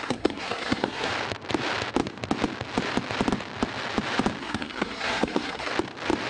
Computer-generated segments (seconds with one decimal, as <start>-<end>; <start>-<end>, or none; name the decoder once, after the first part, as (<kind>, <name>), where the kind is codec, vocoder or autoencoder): 0.0-1.1 (codec, SNAC); 4.4-5.7